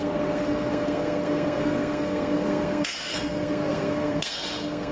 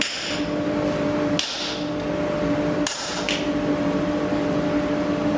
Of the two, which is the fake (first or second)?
first